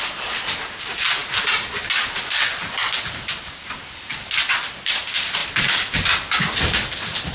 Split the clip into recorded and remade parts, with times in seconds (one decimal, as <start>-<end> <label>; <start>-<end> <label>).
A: 0.0-7.3 recorded